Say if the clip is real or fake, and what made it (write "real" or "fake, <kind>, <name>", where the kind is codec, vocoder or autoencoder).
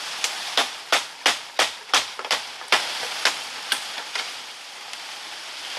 real